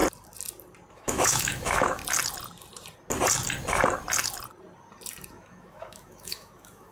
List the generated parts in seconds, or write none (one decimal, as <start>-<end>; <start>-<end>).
0.9-2.0; 5.3-6.9